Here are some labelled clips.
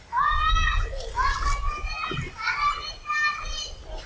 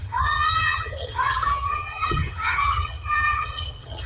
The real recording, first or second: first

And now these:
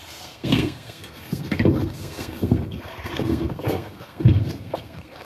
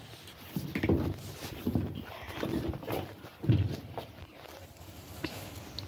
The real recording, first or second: second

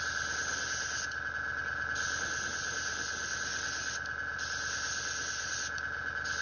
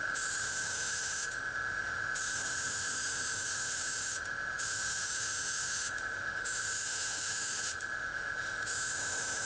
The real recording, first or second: first